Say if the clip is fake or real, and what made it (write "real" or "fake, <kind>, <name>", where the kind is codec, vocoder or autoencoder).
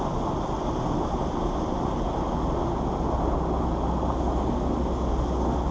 real